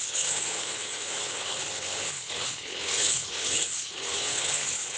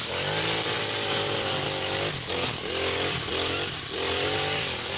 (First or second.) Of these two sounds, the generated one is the first